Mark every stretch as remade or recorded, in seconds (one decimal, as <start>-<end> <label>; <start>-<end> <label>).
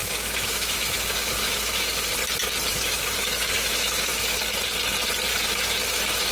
0.0-2.1 remade; 2.1-2.7 recorded; 2.7-4.4 remade; 4.4-5.3 recorded; 5.3-6.3 remade